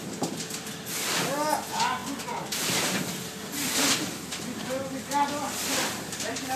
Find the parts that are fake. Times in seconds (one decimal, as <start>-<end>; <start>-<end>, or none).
none